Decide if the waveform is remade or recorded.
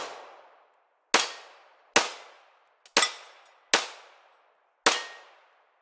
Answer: recorded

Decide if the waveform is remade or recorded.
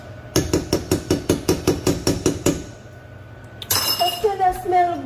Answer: recorded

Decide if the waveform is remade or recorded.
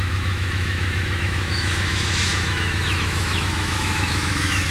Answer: remade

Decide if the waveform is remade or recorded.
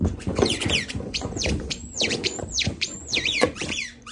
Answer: remade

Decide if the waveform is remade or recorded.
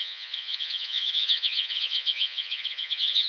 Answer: remade